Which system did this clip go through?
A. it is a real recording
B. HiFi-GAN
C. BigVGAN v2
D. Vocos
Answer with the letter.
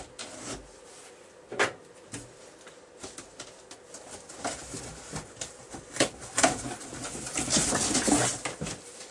A